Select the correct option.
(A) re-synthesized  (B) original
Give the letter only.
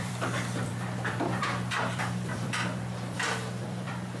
A